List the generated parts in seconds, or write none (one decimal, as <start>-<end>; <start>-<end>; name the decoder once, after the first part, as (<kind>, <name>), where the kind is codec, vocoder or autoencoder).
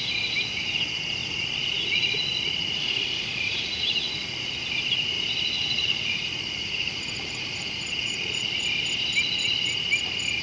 1.2-4.5 (vocoder, Vocos); 5.6-8.5